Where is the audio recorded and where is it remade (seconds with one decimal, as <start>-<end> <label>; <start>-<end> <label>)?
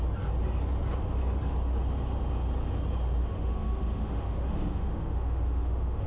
0.0-3.2 recorded; 3.2-6.1 remade